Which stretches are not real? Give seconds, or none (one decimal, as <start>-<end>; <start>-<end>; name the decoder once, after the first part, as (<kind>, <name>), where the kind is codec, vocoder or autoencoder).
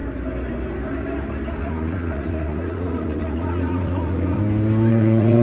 1.6-4.4 (vocoder, Vocos); 4.9-5.4